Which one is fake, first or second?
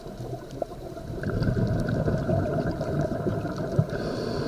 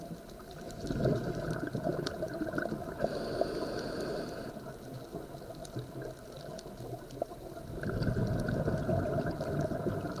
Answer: first